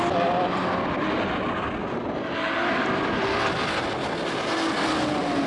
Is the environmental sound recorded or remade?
recorded